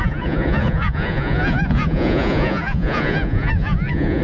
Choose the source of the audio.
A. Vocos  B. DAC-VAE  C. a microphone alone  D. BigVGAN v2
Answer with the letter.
A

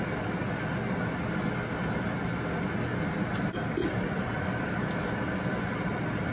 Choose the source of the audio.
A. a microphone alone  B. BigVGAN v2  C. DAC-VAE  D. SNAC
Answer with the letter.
A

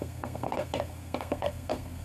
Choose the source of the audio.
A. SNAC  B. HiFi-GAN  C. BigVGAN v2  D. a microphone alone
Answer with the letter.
A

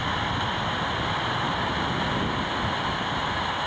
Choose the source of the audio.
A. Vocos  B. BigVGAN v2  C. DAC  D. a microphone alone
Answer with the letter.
D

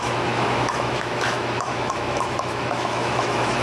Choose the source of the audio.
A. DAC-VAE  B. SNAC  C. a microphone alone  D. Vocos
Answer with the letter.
A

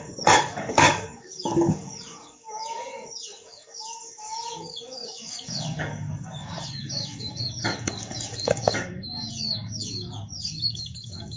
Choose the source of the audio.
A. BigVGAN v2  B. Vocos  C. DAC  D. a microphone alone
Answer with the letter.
C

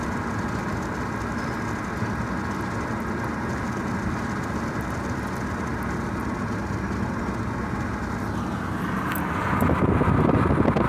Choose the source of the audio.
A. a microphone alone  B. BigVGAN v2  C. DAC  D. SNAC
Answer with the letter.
A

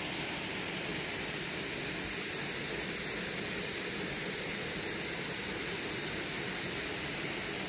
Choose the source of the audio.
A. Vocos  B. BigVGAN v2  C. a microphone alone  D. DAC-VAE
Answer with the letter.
B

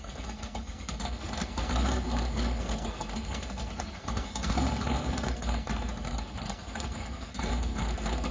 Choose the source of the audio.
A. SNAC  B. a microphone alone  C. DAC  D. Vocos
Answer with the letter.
A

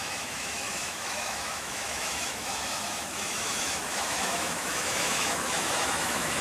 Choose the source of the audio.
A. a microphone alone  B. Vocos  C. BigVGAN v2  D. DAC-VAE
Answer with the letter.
D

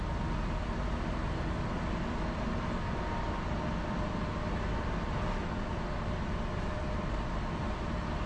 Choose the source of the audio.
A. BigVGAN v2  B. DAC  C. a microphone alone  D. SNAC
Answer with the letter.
C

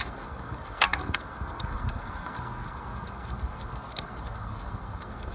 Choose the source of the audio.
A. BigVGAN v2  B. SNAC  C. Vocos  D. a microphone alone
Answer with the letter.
B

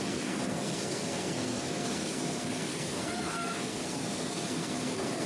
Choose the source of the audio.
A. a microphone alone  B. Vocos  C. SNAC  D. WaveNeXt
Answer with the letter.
C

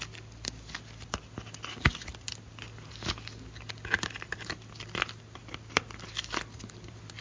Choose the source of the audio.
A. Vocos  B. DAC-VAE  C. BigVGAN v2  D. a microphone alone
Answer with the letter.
D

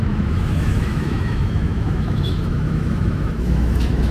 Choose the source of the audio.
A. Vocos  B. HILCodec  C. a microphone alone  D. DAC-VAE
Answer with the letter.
D